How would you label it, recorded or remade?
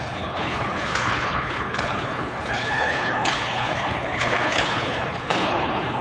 remade